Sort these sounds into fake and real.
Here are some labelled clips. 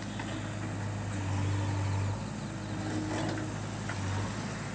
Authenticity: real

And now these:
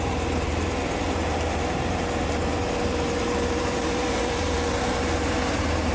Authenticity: fake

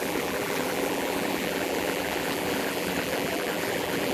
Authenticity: fake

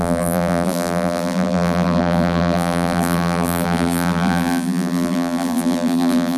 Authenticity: fake